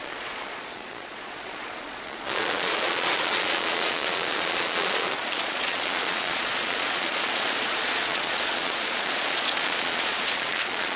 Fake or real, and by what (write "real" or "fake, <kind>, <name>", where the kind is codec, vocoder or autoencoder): fake, vocoder, Vocos